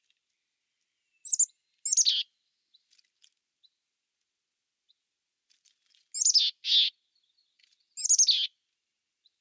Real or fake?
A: real